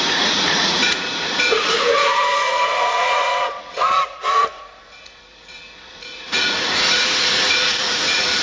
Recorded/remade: remade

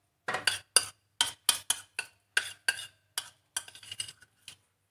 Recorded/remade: recorded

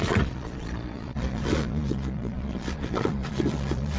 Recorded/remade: remade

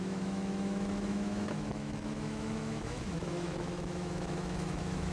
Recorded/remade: remade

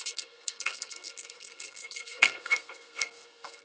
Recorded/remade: remade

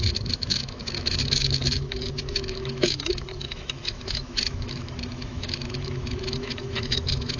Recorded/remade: remade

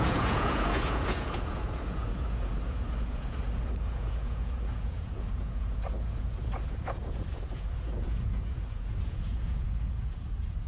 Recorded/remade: remade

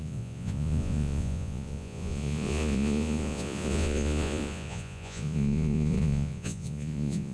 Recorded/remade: remade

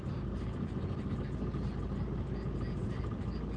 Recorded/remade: recorded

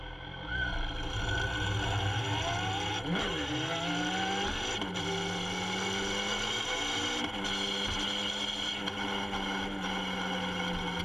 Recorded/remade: recorded